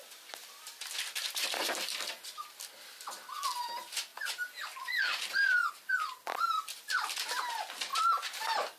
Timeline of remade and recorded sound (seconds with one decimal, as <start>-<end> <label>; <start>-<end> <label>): 0.0-8.8 recorded